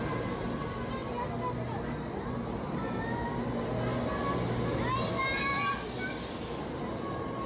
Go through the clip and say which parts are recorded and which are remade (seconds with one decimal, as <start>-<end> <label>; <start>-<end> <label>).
0.0-7.5 recorded